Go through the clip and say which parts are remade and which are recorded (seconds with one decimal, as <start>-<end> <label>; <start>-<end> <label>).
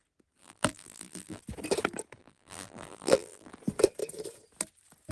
0.0-0.4 recorded; 0.4-1.4 remade; 1.4-2.2 recorded; 2.2-3.5 remade; 3.5-5.1 recorded